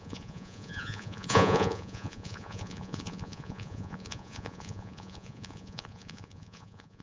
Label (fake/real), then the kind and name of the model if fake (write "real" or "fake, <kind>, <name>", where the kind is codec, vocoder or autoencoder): fake, vocoder, Vocos